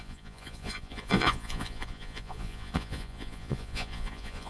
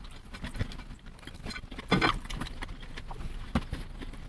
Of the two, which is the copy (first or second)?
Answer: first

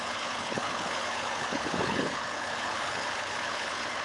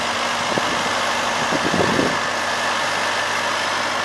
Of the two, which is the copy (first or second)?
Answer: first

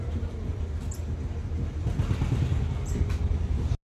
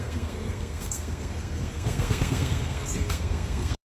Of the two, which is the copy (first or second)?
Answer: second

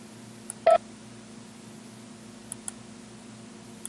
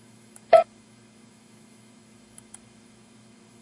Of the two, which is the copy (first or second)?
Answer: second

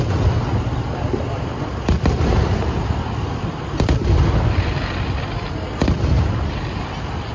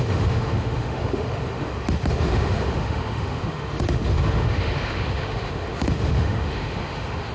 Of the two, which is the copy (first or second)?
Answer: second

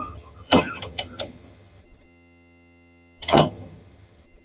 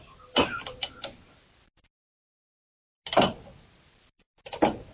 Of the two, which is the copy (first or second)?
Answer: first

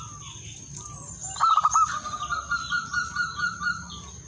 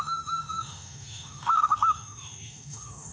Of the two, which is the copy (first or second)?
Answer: second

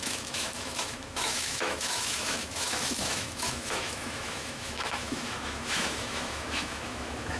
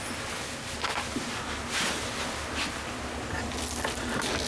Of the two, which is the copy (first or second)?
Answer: first